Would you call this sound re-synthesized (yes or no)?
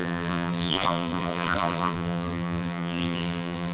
yes